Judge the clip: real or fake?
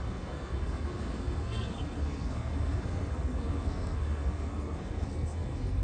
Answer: fake